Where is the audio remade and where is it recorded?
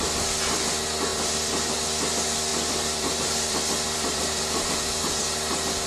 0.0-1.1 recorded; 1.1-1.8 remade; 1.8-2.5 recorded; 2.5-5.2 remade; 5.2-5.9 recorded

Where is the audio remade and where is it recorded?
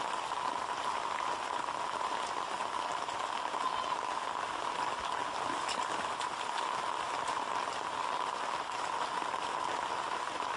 0.0-10.6 recorded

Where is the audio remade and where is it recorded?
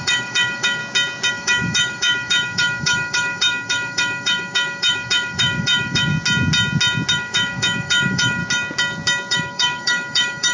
0.0-0.8 remade; 0.8-1.3 recorded; 1.3-6.1 remade; 6.1-7.1 recorded; 7.1-8.4 remade; 8.4-9.3 recorded; 9.3-10.5 remade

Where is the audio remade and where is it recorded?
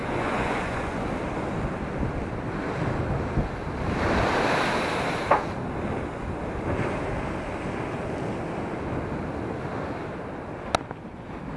0.0-1.1 remade; 1.1-11.6 recorded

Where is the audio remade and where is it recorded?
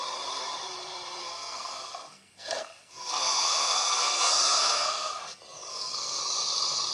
0.0-1.2 recorded; 1.2-5.2 remade; 5.2-5.7 recorded; 5.7-6.2 remade; 6.2-6.9 recorded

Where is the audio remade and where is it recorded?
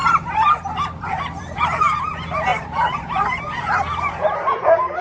0.0-2.0 remade; 2.0-2.5 recorded; 2.5-4.1 remade; 4.1-5.0 recorded